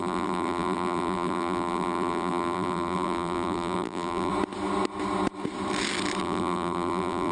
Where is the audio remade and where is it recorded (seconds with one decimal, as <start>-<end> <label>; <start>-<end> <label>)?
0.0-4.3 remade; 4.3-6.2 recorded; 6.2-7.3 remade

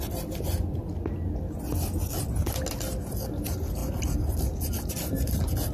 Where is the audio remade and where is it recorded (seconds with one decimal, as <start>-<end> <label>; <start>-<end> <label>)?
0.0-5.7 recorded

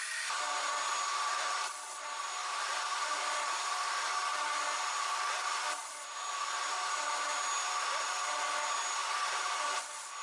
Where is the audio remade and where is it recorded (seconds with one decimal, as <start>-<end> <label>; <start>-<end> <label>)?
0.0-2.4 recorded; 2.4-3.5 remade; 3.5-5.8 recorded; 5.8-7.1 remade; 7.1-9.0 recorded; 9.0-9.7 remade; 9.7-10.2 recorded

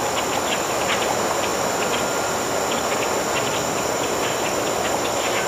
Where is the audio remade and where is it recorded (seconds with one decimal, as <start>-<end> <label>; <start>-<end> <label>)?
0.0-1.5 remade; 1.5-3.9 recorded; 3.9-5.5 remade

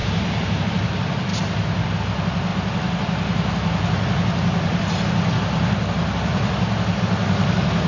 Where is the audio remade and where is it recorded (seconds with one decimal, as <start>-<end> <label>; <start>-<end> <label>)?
0.0-0.6 remade; 0.6-1.3 recorded; 1.3-2.0 remade; 2.0-7.9 recorded

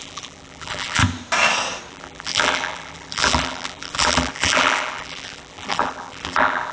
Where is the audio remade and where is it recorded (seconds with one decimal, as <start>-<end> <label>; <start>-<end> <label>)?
0.0-1.0 remade; 1.0-1.9 recorded; 1.9-6.7 remade

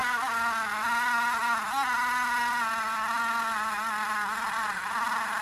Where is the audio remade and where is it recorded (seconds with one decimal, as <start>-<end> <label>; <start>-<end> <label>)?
0.0-5.4 recorded